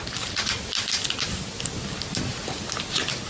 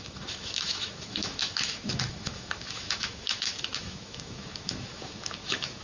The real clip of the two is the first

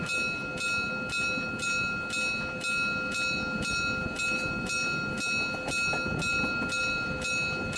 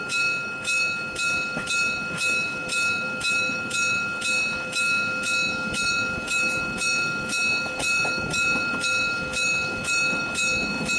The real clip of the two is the first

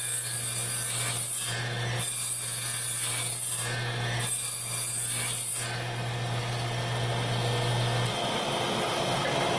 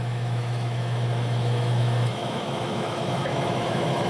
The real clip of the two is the first